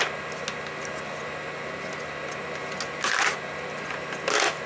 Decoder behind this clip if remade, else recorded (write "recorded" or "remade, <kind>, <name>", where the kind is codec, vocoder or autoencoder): recorded